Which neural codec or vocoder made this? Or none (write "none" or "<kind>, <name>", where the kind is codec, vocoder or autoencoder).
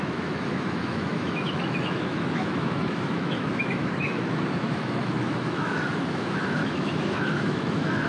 autoencoder, DAC-VAE